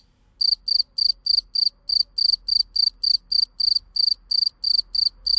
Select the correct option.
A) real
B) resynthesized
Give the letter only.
A